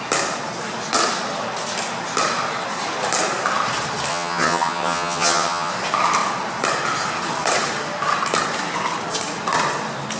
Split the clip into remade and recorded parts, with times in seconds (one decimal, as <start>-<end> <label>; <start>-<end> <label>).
0.0-4.1 recorded; 4.1-5.7 remade; 5.7-10.2 recorded